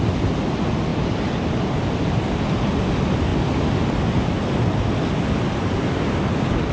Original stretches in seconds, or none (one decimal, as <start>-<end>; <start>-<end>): 0.0-6.7